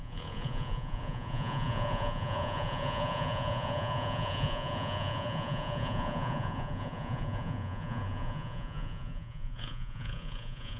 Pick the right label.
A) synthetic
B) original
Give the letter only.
A